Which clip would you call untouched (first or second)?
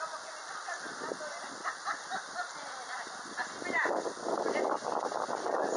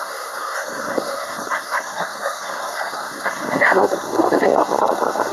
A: first